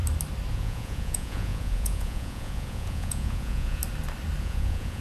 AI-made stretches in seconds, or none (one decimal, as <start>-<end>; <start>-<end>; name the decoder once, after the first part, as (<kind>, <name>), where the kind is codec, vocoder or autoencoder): 0.5-3.8 (vocoder, Vocos); 4.4-5.0